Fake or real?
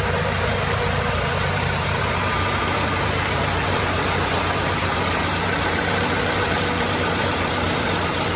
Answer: fake